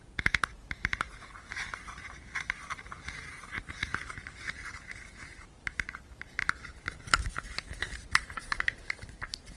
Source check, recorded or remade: remade